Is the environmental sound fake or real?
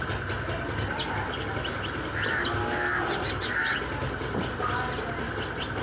real